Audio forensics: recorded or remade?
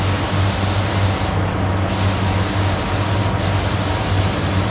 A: recorded